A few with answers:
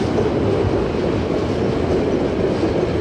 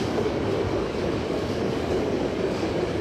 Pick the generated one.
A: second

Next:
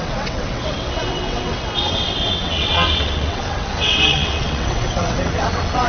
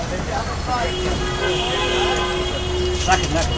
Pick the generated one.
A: first